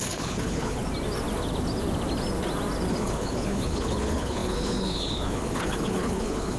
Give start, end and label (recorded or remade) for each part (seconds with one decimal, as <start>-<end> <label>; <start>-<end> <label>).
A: 0.0-0.8 remade; 0.8-2.9 recorded; 2.9-6.6 remade